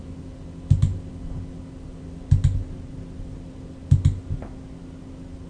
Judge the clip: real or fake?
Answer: real